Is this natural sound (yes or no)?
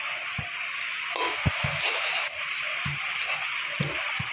yes